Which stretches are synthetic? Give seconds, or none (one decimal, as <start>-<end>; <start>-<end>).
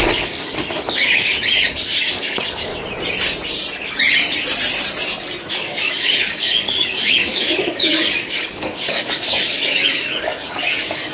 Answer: 0.0-2.7; 5.5-11.1